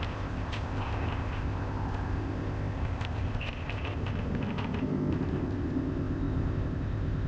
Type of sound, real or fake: fake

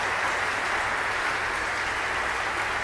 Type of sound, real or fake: real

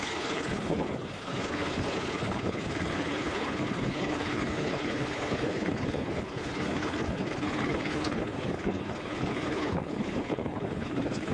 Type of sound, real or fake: fake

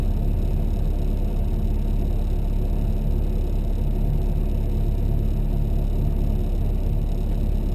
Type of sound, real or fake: real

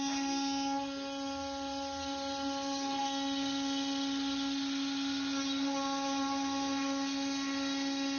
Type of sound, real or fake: real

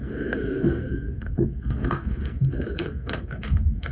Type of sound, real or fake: fake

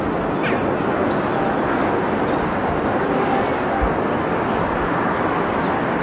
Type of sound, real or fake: real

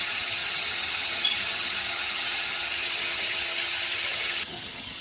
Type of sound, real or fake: fake